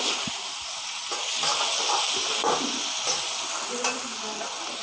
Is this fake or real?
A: real